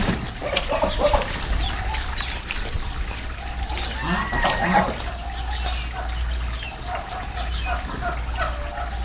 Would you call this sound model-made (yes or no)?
no